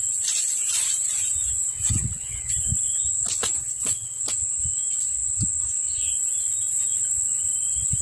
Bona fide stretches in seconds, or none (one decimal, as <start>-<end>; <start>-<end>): 0.0-1.7; 2.5-3.6; 4.2-8.0